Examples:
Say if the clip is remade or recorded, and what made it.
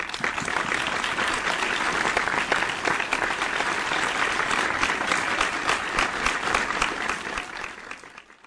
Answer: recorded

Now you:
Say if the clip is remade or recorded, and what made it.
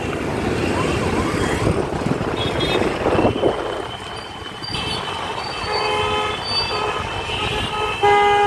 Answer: recorded